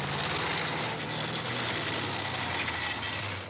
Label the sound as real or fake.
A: real